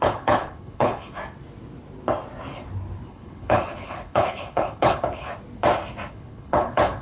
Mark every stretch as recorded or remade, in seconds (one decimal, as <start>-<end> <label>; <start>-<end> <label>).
0.0-1.2 remade; 1.2-3.1 recorded; 3.1-5.3 remade; 5.3-6.1 recorded; 6.1-7.0 remade